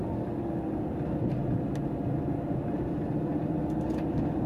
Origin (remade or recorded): recorded